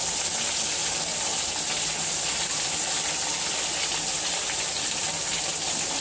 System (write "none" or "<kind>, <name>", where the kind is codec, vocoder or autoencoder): none